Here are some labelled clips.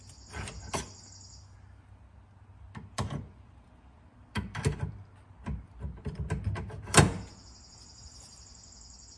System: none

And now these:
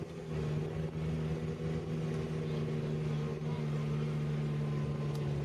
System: none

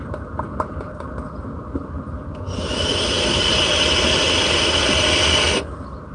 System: none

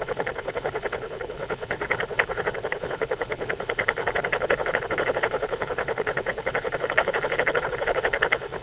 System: codec, HILCodec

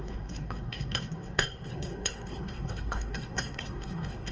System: codec, SNAC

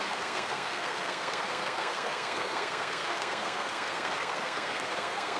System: codec, SNAC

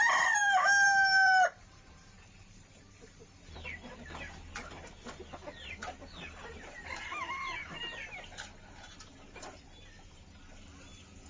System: vocoder, BigVGAN v2